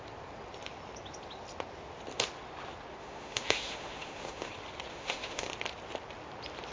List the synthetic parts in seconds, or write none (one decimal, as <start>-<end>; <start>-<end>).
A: 3.0-4.5; 4.9-5.5